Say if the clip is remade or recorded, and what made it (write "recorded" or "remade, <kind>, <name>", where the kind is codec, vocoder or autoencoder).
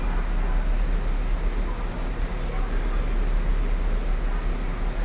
recorded